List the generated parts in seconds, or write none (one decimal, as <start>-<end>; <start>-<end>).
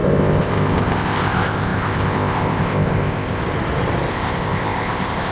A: 0.0-3.4; 4.1-5.3